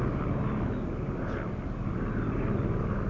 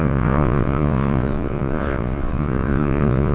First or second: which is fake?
second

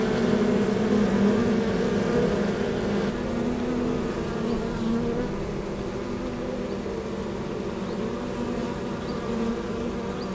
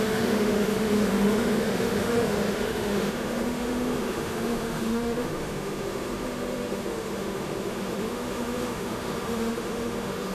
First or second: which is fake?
second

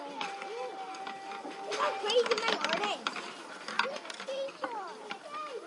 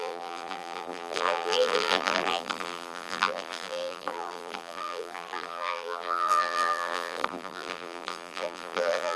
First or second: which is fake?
second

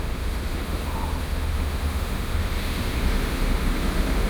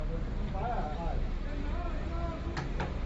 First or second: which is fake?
first